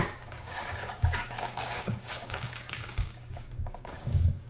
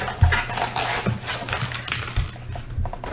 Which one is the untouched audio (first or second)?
second